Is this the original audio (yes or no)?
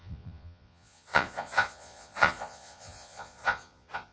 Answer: no